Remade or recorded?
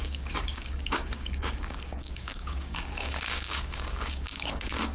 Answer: remade